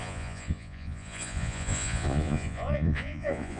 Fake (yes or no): yes